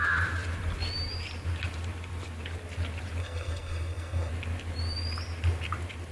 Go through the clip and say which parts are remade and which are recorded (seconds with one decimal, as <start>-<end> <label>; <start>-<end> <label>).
0.0-3.2 recorded; 3.2-4.3 remade; 4.3-6.1 recorded